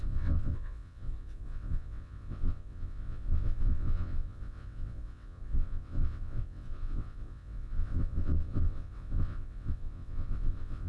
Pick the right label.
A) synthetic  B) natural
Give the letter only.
A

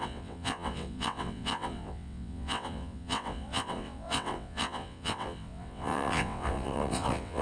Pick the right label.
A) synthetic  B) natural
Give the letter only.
A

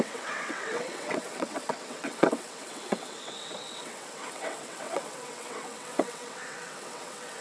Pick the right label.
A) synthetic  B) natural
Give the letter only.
A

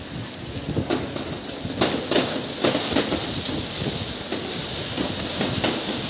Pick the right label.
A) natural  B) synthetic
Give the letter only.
A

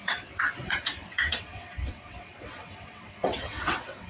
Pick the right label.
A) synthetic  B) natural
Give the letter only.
A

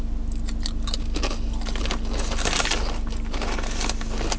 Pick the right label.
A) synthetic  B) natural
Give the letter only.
B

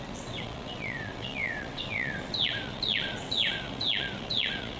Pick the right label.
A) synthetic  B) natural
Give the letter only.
A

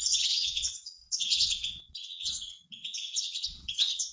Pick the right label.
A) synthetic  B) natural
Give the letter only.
A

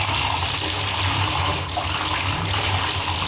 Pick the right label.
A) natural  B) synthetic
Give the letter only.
A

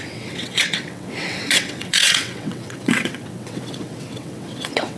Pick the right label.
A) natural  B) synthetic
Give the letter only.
B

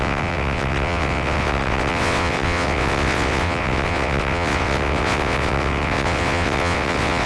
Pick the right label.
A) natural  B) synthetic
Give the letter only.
B